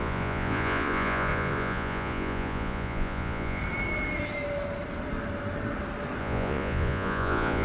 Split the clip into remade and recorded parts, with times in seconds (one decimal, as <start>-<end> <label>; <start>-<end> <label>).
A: 0.0-3.6 remade; 3.6-6.2 recorded; 6.2-7.6 remade